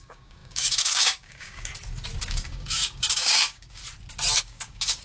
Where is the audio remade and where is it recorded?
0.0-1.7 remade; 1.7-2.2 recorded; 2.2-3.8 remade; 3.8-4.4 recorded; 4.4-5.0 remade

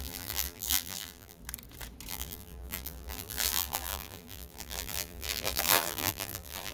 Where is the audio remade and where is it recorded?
0.0-1.4 remade; 1.4-2.1 recorded; 2.1-6.7 remade

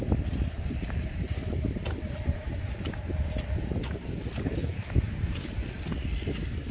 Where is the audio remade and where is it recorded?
0.0-2.4 remade; 2.4-3.9 recorded; 3.9-6.7 remade

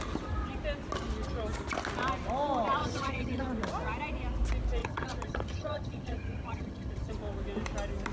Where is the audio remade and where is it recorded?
0.0-2.8 recorded; 2.8-3.4 remade; 3.4-4.8 recorded; 4.8-7.1 remade; 7.1-8.1 recorded

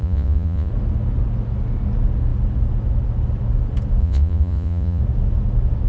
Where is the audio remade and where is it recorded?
0.0-0.7 remade; 0.7-4.0 recorded; 4.0-5.0 remade; 5.0-5.9 recorded

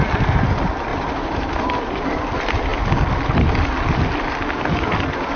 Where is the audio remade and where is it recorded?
0.0-0.9 recorded; 0.9-1.5 remade; 1.5-5.4 recorded

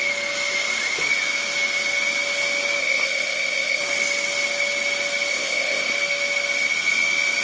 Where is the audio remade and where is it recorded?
0.0-2.8 recorded; 2.8-3.8 remade; 3.8-5.3 recorded; 5.3-5.9 remade; 5.9-7.4 recorded